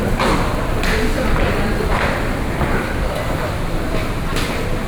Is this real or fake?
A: real